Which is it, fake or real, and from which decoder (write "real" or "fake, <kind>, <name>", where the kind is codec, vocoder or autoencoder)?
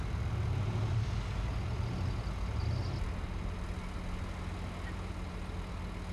real